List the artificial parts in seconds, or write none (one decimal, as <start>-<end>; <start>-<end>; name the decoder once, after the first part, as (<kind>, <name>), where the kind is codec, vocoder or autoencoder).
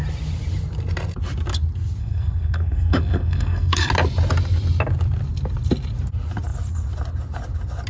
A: 2.0-3.9 (codec, SNAC)